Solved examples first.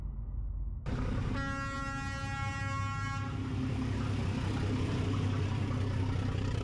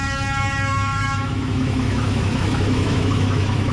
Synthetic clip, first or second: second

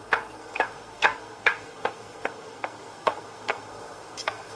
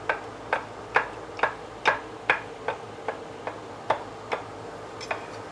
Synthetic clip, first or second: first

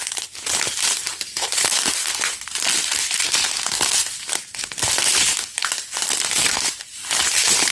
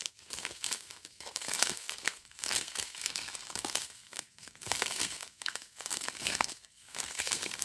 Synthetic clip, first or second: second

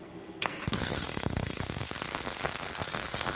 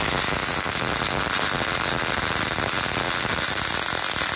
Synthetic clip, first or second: first